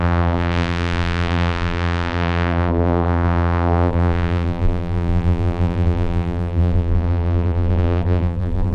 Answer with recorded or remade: remade